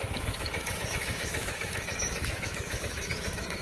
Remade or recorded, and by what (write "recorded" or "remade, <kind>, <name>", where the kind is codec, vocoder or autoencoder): remade, autoencoder, DAC-VAE